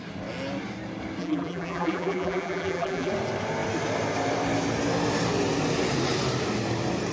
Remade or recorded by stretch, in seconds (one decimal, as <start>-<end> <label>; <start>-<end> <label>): 0.0-1.2 recorded; 1.2-3.1 remade; 3.1-7.1 recorded